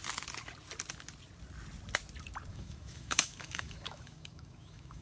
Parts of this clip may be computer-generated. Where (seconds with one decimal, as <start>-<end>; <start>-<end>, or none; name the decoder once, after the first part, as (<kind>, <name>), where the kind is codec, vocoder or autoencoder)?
2.5-5.0 (autoencoder, DAC-VAE)